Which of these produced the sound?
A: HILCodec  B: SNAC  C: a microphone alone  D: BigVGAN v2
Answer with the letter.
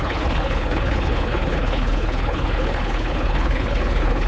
A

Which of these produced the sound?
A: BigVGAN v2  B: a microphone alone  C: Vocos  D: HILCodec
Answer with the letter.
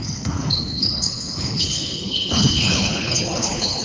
D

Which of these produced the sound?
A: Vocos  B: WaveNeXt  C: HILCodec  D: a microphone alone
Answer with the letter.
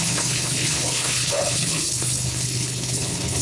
C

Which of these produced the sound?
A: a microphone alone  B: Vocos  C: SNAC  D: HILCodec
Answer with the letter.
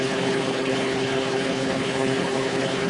D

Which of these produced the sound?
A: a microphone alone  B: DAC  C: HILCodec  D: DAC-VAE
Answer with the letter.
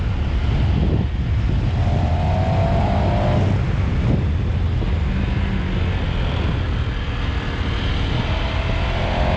A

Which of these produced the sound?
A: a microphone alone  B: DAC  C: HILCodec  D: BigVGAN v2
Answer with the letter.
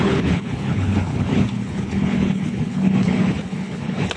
C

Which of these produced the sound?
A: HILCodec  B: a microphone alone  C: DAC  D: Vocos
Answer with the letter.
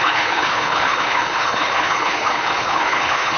A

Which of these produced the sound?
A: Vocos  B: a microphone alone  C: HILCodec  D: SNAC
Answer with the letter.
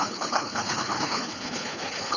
C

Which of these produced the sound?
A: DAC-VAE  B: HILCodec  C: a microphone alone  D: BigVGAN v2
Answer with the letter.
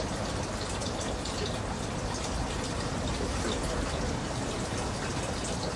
C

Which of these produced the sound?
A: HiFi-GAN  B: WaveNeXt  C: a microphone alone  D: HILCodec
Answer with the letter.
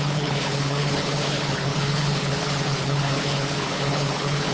D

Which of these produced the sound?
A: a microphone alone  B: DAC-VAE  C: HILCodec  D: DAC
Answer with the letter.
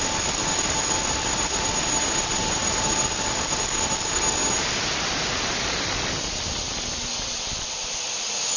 A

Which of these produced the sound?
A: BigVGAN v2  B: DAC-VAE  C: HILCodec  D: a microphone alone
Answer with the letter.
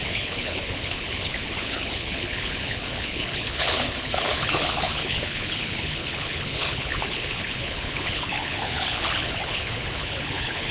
C